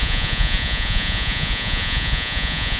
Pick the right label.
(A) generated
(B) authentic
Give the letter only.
A